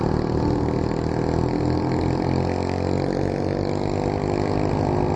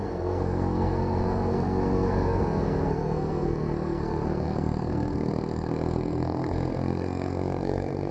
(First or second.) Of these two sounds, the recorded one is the first